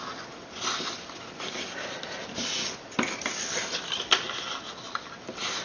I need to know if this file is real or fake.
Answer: real